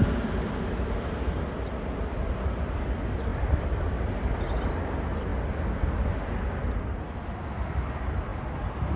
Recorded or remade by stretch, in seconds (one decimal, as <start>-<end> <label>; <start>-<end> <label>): 0.0-9.0 recorded